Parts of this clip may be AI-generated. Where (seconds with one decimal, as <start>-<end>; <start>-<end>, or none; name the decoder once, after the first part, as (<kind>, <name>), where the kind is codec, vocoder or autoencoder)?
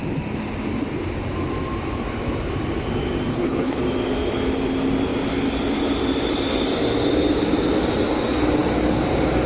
3.3-3.8 (codec, HILCodec)